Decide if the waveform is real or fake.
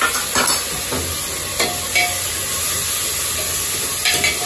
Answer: real